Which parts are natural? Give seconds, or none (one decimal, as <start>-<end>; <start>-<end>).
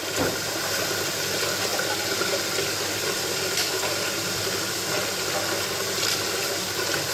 0.0-7.1